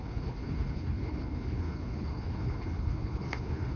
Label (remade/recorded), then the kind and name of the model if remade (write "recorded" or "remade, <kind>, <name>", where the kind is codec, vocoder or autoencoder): remade, codec, HILCodec